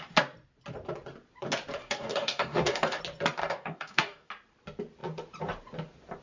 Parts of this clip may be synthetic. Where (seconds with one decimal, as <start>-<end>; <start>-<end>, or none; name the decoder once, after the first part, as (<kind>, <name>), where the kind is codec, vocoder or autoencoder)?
1.8-3.0 (codec, DAC); 3.4-4.3